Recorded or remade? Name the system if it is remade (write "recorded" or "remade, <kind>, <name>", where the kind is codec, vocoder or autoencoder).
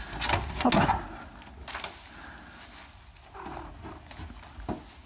recorded